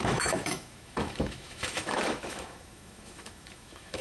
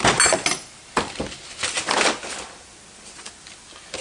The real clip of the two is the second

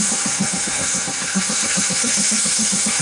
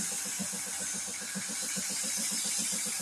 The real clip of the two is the second